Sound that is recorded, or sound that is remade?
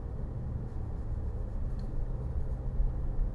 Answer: recorded